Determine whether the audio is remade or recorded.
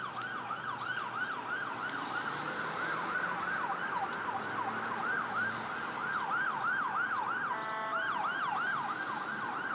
recorded